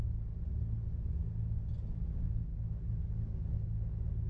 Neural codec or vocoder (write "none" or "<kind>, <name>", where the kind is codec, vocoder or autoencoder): none